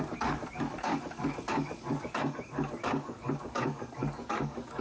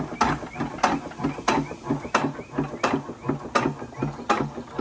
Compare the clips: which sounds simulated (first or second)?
first